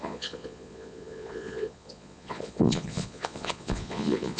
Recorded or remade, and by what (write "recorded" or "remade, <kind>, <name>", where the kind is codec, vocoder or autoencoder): remade, vocoder, Vocos